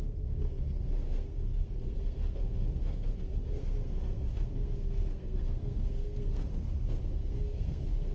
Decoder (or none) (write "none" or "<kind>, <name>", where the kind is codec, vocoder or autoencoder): codec, SNAC